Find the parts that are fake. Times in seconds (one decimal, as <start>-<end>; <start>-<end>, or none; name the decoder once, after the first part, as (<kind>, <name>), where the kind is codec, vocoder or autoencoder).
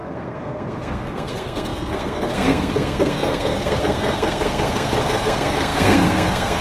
0.0-6.6 (codec, SNAC)